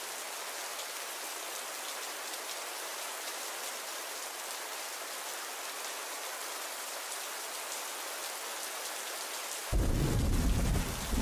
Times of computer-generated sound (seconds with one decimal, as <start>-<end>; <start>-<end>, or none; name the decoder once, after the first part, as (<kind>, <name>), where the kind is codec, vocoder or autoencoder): 0.7-1.6 (vocoder, BigVGAN v2); 2.9-6.9

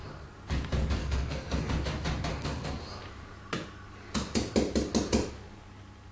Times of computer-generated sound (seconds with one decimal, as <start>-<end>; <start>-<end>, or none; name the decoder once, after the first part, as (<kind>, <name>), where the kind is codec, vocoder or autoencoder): 1.0-1.7 (codec, SNAC); 2.3-2.8

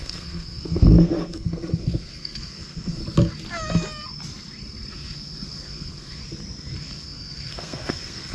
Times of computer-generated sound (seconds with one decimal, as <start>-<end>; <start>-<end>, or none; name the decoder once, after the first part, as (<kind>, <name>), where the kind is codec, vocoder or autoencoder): 0.0-3.0 (codec, SNAC); 4.9-6.2; 6.8-8.3

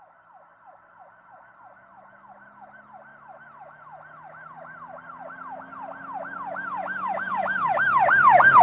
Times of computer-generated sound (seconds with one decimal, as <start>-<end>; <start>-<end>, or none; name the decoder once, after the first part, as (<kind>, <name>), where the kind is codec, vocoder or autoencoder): none

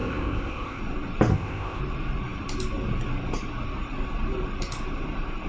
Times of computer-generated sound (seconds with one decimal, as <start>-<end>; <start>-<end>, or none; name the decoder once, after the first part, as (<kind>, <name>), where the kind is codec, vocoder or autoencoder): 0.0-0.8 (codec, ZipCodec); 1.3-1.8

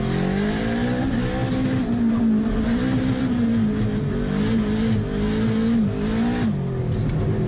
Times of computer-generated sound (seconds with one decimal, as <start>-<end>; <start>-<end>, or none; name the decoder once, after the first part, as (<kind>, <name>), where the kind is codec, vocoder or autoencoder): none

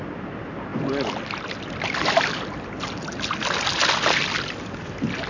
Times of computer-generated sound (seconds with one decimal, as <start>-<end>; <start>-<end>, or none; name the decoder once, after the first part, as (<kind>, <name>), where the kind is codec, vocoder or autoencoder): none